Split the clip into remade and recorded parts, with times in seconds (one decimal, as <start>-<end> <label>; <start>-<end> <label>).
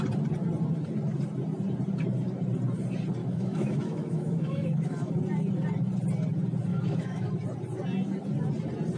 0.0-3.2 recorded; 3.2-5.1 remade; 5.1-6.7 recorded; 6.7-7.3 remade; 7.3-9.0 recorded